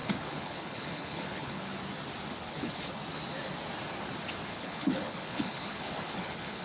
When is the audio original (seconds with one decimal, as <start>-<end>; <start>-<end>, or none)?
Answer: 1.7-2.3; 3.0-4.5

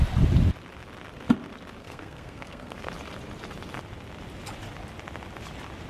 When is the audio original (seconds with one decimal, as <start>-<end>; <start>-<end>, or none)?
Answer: 0.0-1.8; 2.9-5.9

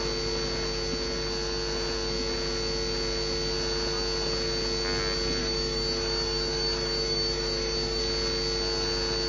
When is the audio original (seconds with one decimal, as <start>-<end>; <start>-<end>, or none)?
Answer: 0.0-5.4; 8.0-9.3

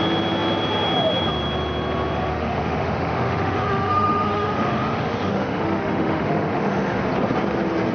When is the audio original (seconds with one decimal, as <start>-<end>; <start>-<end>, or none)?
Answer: 0.0-2.3; 7.0-7.9

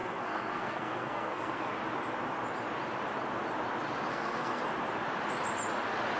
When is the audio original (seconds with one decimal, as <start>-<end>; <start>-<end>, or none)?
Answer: 1.7-4.1; 4.6-6.2